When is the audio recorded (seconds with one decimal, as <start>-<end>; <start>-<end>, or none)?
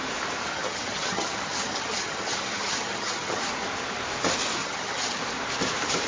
0.0-0.4; 3.4-4.6; 5.2-6.1